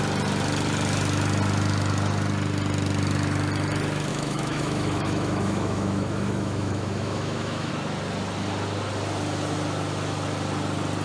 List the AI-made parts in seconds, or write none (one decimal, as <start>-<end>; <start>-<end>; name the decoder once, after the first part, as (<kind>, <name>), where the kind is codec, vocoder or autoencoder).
4.1-7.7 (autoencoder, DAC-VAE)